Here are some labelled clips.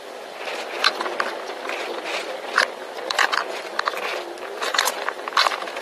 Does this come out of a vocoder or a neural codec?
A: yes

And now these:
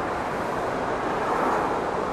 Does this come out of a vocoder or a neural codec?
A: no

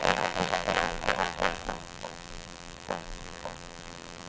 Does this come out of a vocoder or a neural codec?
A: yes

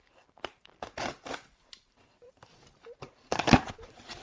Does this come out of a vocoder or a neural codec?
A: yes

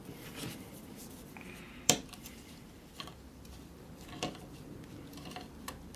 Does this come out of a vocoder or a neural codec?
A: yes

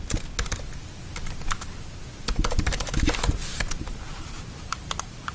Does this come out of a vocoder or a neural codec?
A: no